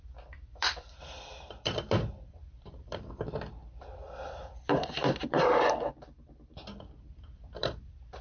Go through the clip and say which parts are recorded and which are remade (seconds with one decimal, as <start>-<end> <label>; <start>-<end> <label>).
0.0-0.5 recorded; 0.5-5.4 remade; 5.4-7.6 recorded; 7.6-8.2 remade